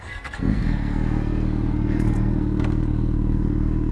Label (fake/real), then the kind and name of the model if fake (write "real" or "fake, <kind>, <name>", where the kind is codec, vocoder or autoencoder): fake, codec, SNAC